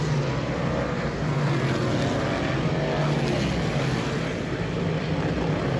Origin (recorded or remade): recorded